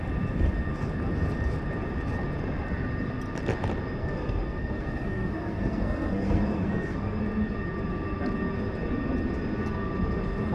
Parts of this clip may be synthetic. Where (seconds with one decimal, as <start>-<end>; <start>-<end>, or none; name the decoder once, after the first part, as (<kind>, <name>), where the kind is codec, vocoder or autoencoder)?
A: 4.0-7.2 (codec, SNAC)